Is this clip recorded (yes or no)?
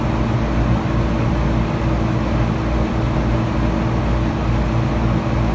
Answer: yes